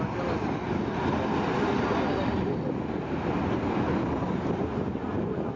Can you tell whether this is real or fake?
real